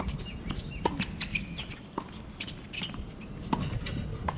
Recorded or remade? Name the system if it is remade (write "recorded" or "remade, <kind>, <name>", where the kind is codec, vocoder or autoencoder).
recorded